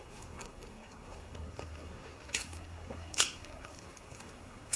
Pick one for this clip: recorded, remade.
remade